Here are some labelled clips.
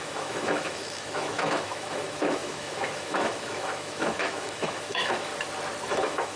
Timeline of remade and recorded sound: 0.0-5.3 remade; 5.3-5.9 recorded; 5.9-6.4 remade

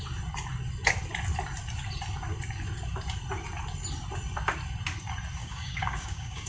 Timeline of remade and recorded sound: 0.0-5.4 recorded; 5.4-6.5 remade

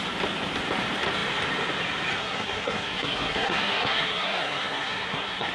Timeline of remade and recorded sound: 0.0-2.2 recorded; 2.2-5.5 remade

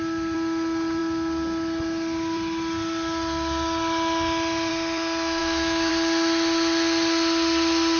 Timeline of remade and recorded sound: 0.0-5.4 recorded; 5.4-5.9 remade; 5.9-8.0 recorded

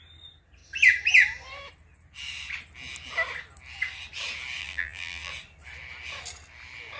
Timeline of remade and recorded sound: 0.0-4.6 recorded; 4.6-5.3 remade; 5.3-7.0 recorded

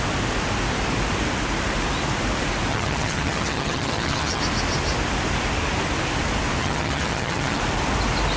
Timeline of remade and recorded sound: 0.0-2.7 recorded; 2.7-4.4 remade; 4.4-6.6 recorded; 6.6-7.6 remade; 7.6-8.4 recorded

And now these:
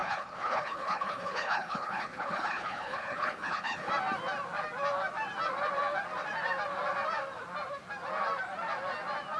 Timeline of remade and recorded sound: 0.0-3.9 remade; 3.9-9.4 recorded